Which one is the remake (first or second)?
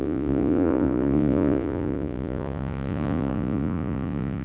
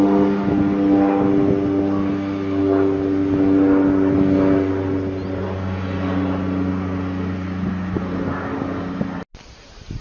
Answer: first